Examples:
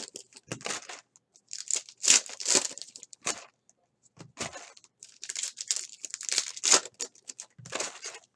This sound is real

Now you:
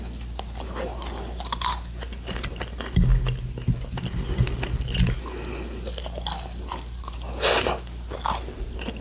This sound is real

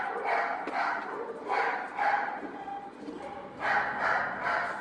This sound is real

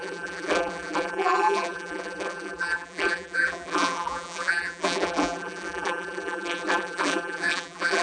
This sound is fake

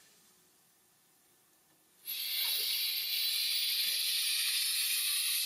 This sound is real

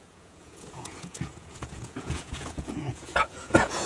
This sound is fake